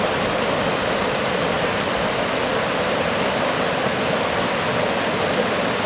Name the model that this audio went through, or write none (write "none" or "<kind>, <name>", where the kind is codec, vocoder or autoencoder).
none